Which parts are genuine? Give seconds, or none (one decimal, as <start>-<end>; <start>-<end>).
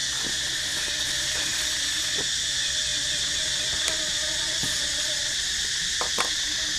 0.0-6.8